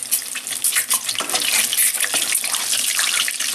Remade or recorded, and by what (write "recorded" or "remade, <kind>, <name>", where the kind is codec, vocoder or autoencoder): recorded